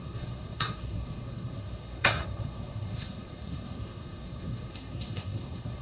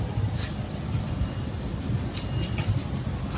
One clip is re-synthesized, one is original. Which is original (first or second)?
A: second